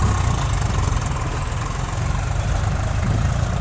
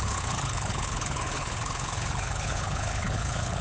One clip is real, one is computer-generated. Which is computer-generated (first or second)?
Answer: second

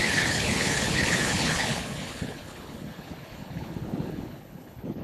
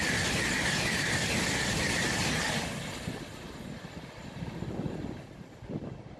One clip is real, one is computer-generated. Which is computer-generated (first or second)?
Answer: first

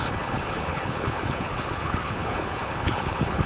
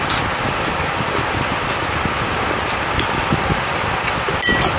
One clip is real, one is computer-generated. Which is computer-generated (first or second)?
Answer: first